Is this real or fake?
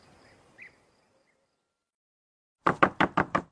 real